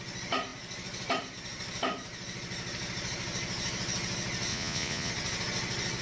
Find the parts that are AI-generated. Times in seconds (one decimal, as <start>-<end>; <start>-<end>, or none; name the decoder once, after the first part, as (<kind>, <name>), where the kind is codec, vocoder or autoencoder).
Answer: 4.5-5.1 (vocoder, Vocos)

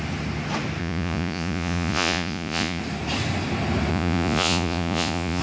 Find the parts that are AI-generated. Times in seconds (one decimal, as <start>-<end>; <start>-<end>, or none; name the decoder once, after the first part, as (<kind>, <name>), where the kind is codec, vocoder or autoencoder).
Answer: 0.8-2.8 (vocoder, Vocos); 3.9-5.4

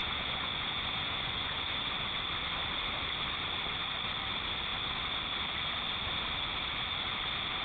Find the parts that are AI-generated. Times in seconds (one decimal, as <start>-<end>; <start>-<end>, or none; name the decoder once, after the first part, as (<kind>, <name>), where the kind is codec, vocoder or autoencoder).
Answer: 0.0-1.9 (vocoder, Vocos)

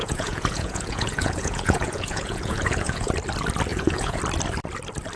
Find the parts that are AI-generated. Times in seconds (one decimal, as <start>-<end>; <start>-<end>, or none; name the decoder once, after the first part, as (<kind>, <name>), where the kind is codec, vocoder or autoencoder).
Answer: 0.0-3.1 (vocoder, Vocos); 3.7-4.2

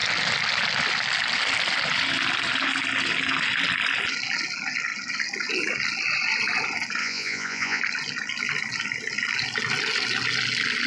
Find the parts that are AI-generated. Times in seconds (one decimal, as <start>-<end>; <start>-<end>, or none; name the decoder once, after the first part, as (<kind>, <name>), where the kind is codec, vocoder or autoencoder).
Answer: 7.0-7.8 (vocoder, Vocos)

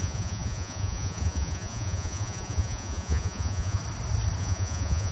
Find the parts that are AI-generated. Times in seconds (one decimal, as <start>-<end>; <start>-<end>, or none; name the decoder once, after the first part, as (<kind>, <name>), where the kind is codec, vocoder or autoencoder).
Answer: 0.0-3.8 (vocoder, Vocos); 4.4-5.1